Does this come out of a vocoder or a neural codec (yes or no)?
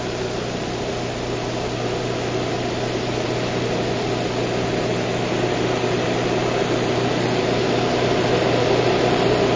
no